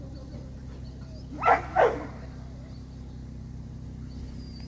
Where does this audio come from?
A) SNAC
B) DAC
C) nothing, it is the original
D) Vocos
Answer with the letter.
C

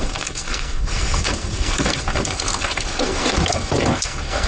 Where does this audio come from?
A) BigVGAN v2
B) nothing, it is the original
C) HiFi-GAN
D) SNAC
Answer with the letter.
D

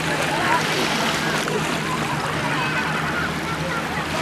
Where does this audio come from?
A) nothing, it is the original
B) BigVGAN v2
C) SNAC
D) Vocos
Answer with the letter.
A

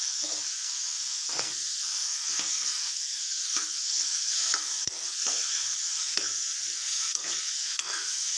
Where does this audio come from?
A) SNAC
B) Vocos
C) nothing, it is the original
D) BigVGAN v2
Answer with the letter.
A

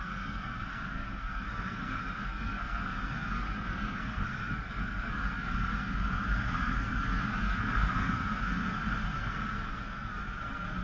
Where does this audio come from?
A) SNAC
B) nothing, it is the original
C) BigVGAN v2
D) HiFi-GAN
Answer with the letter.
A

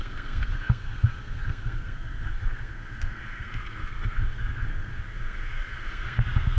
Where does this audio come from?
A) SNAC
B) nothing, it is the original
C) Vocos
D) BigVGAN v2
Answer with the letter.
A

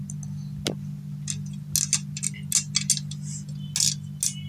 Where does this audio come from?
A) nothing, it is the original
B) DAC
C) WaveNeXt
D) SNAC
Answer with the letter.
A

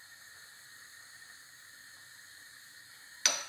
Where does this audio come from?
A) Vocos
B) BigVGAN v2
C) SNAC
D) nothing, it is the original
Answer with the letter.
D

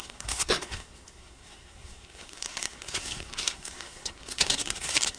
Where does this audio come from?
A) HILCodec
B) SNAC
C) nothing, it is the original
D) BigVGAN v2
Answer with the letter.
B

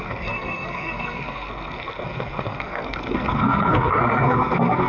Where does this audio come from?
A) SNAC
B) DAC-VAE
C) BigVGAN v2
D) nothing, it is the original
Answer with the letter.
A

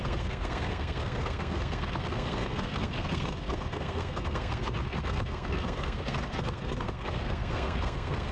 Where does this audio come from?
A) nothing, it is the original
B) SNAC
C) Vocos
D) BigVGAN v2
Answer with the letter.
B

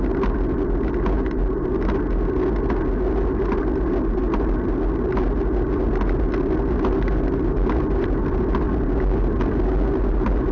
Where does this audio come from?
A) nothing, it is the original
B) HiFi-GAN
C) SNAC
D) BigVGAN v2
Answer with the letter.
A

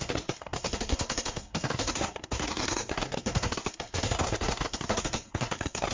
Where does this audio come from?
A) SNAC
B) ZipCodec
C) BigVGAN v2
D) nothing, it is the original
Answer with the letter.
A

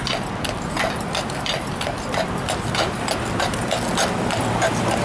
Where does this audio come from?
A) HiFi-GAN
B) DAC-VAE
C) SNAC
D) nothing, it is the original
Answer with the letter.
D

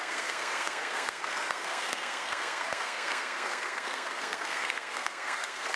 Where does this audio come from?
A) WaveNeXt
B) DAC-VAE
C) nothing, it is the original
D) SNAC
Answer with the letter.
D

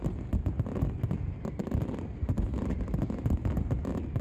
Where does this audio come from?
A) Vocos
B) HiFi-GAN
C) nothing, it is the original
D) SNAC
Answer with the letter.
C